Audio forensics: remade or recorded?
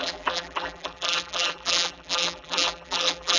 remade